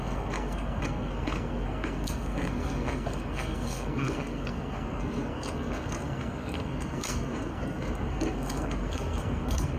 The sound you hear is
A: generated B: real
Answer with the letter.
A